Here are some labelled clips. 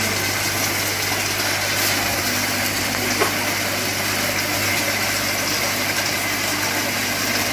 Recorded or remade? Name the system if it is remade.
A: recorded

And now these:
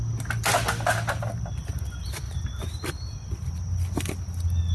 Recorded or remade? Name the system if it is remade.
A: recorded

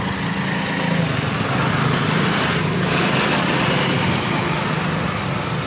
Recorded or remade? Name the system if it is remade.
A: recorded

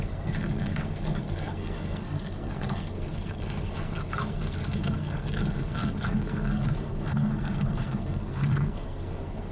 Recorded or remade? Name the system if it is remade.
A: remade, codec, SNAC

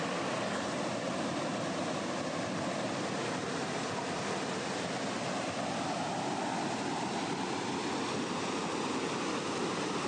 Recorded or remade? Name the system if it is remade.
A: recorded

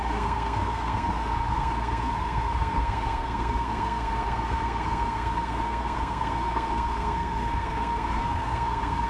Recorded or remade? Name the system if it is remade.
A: remade, codec, SNAC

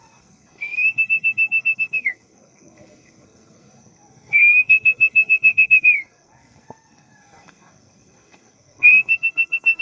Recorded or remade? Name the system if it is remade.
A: remade, codec, SNAC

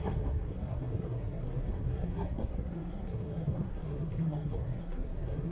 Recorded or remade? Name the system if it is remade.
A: remade, codec, SNAC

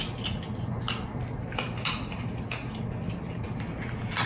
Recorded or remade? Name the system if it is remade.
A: recorded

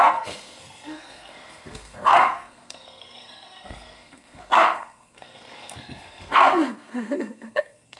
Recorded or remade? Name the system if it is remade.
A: remade, codec, SNAC